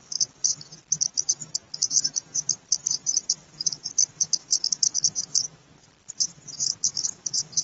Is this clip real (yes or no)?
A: yes